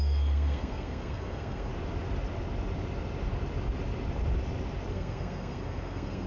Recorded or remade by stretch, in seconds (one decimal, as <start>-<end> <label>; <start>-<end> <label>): 0.0-1.7 remade; 1.7-4.9 recorded; 4.9-6.3 remade